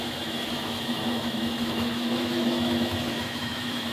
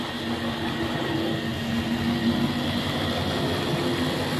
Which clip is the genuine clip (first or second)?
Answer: second